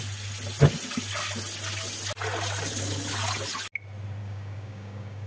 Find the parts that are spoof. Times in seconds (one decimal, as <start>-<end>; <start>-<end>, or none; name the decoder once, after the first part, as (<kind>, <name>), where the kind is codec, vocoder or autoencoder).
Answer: 4.2-5.3 (codec, DAC)